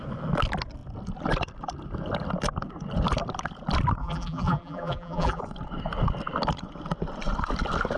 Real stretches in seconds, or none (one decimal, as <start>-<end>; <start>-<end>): 0.0-4.0; 5.4-8.0